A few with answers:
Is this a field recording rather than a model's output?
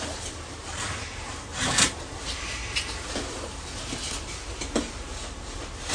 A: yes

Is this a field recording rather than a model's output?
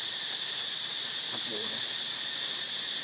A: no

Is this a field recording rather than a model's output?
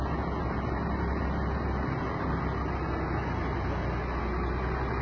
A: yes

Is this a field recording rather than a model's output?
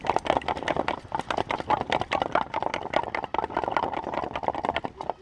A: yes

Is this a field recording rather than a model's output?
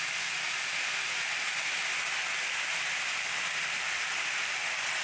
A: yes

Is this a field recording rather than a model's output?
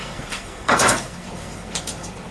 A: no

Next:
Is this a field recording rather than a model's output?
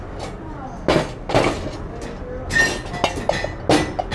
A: yes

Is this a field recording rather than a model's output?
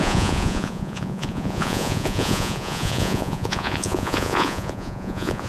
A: no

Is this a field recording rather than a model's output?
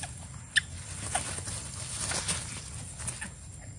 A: yes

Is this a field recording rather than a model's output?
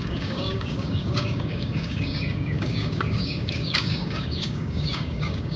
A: no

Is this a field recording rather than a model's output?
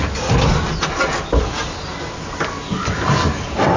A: yes